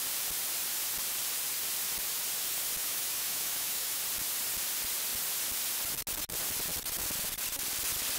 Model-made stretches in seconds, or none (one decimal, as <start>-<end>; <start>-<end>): 2.8-4.0